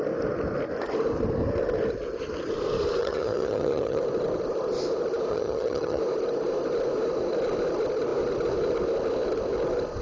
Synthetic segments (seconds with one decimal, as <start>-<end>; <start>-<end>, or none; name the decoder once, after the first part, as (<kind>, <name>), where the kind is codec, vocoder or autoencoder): 3.0-4.0 (vocoder, HiFi-GAN); 5.3-6.0